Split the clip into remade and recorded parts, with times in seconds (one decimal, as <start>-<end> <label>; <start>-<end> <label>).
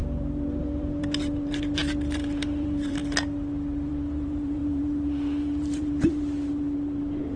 0.0-3.0 remade; 3.0-3.9 recorded; 3.9-7.4 remade